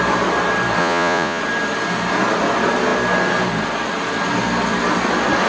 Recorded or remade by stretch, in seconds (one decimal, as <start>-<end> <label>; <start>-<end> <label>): 0.0-0.8 recorded; 0.8-1.4 remade; 1.4-5.5 recorded